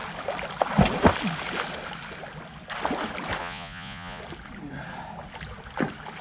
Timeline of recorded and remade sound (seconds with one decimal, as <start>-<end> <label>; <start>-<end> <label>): 0.0-3.4 recorded; 3.4-4.2 remade; 4.2-6.2 recorded